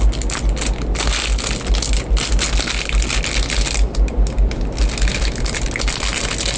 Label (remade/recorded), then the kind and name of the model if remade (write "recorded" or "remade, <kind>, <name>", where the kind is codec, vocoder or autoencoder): recorded